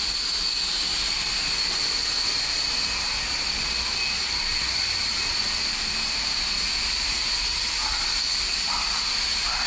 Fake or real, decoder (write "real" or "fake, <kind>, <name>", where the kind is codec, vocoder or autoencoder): real